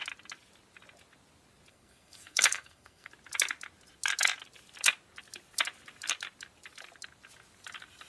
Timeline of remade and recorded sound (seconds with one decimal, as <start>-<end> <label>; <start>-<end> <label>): 0.0-1.7 recorded; 1.7-3.1 remade; 3.1-8.1 recorded